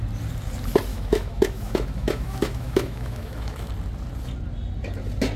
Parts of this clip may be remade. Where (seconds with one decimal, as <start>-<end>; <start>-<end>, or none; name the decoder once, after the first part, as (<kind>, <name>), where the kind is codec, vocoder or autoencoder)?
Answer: 0.9-3.7 (autoencoder, DAC-VAE)